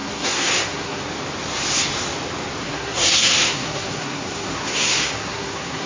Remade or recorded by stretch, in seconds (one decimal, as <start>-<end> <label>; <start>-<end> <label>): 0.0-1.0 remade; 1.0-2.6 recorded; 2.6-5.9 remade